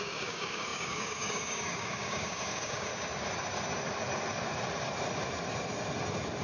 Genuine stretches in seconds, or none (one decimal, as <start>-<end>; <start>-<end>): 2.9-6.4